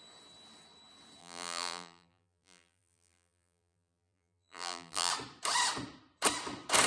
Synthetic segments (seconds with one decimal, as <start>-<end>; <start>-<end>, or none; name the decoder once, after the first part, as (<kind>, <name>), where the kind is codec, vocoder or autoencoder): 1.2-5.1 (vocoder, BigVGAN v2)